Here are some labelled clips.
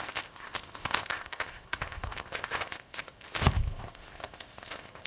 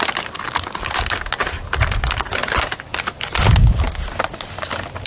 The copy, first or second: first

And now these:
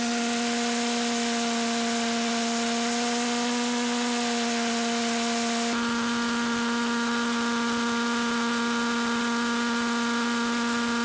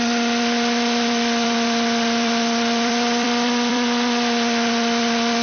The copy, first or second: second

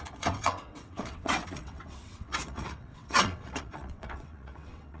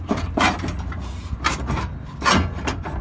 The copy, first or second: first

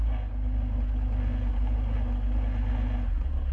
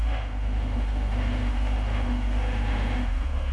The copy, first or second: second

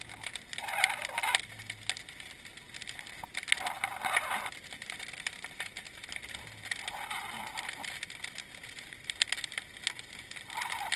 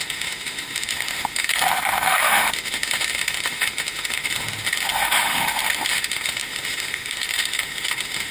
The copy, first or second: second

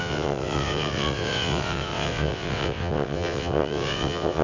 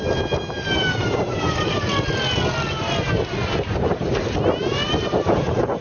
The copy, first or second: first